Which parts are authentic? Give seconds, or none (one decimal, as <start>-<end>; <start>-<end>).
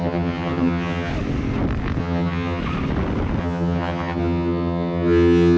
1.1-2.0; 2.6-3.4